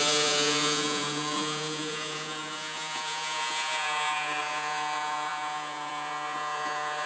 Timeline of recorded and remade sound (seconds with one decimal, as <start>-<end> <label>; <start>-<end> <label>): 0.0-7.1 remade